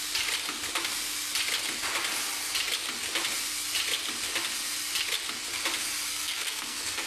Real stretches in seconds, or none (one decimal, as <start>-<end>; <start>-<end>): 0.0-6.1